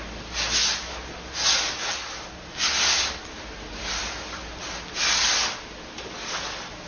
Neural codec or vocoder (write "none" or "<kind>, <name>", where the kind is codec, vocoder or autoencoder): none